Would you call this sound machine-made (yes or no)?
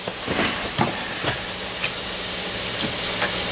no